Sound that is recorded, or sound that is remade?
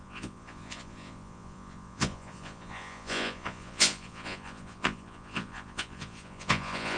remade